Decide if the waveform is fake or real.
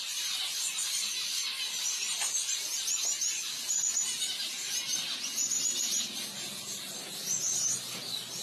real